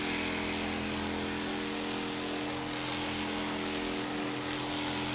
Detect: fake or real real